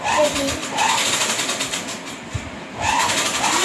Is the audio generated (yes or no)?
no